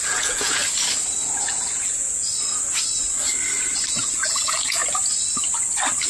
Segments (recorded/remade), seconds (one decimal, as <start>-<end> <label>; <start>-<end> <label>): 0.0-0.6 remade; 0.6-1.4 recorded; 1.4-2.3 remade; 2.3-4.0 recorded; 4.0-4.8 remade; 4.8-6.1 recorded